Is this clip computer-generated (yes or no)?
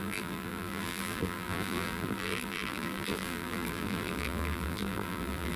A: yes